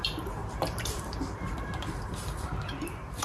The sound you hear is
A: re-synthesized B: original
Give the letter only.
A